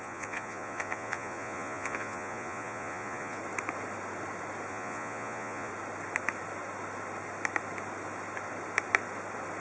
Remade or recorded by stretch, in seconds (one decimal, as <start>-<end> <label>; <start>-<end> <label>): 0.0-3.4 remade; 3.4-4.7 recorded; 4.7-5.7 remade; 5.7-9.6 recorded